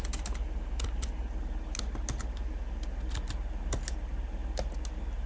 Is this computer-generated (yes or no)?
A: no